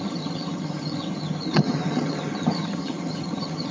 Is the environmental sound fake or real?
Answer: fake